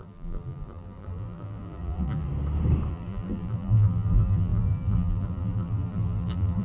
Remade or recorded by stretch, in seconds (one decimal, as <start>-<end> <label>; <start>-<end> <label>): 0.0-2.3 remade; 2.3-2.9 recorded; 2.9-6.6 remade